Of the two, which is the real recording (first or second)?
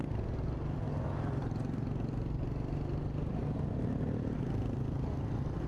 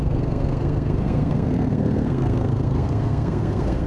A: first